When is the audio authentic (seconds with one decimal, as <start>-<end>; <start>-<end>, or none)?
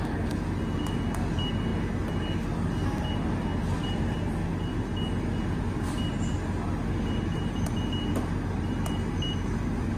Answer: 0.0-10.0